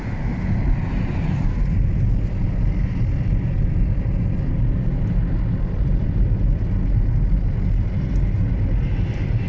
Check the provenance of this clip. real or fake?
real